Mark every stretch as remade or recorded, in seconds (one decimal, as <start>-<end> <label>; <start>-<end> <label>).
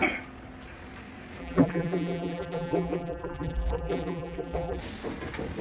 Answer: 0.0-1.4 recorded; 1.4-4.8 remade; 4.8-5.6 recorded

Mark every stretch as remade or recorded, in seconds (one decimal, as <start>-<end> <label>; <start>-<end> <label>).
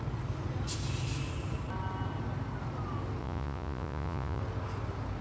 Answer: 0.0-3.2 recorded; 3.2-4.4 remade; 4.4-5.2 recorded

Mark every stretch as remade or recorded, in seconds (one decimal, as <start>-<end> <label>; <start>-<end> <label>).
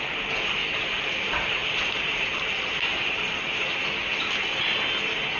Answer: 0.0-0.6 recorded; 0.6-3.8 remade; 3.8-5.4 recorded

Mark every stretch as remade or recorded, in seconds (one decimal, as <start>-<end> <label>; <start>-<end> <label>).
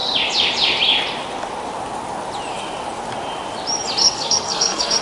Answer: 0.0-4.0 recorded; 4.0-5.0 remade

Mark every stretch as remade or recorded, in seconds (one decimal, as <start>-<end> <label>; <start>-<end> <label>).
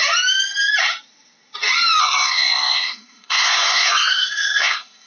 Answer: 0.0-2.0 recorded; 2.0-5.1 remade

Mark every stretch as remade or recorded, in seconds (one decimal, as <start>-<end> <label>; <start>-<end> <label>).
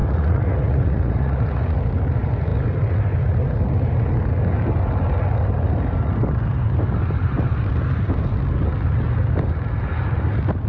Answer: 0.0-1.8 remade; 1.8-10.7 recorded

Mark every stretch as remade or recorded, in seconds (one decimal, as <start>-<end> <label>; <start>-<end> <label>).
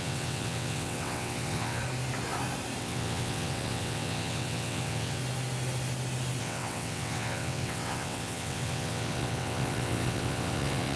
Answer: 0.0-1.8 remade; 1.8-2.8 recorded; 2.8-5.2 remade; 5.2-6.4 recorded; 6.4-11.0 remade